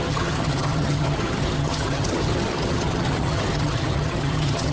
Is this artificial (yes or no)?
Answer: yes